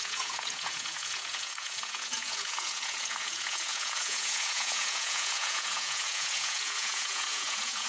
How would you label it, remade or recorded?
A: remade